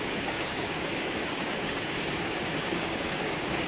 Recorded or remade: remade